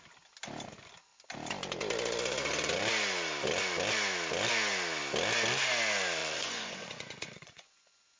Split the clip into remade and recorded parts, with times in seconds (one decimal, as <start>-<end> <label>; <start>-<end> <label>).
0.0-6.2 recorded; 6.2-8.2 remade